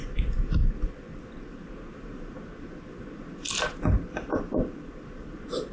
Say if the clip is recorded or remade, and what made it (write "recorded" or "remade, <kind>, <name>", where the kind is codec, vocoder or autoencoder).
recorded